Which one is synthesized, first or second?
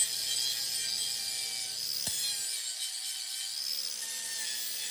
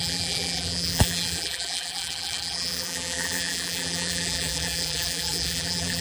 second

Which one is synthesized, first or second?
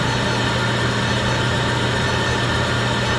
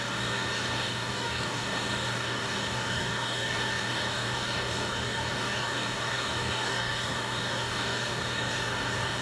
second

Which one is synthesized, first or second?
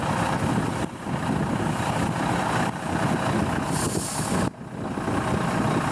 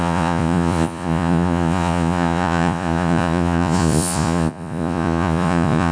second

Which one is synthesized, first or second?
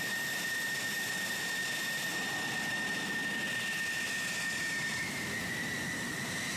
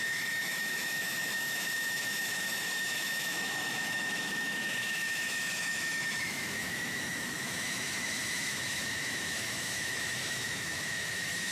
second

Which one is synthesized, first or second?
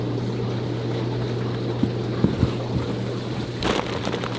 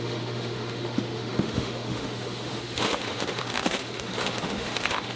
second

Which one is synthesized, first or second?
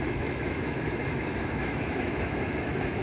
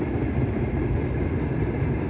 first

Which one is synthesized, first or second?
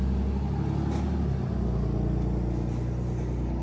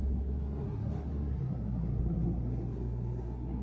second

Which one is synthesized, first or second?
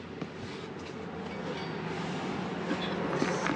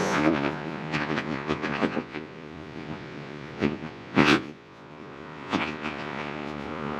second